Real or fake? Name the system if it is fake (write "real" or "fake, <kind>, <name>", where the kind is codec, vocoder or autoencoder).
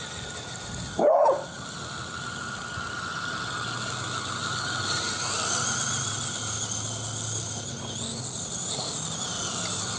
real